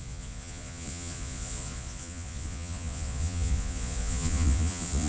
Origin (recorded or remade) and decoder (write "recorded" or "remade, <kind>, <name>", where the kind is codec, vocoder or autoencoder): remade, vocoder, Vocos